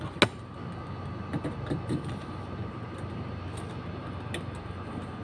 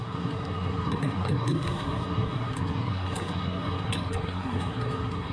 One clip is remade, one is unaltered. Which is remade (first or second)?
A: second